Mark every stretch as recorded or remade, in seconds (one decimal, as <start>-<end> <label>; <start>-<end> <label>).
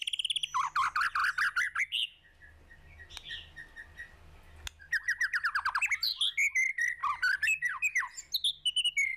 0.0-9.2 recorded